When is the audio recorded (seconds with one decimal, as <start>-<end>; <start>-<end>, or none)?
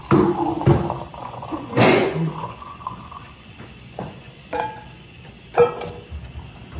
0.0-1.2; 5.3-6.8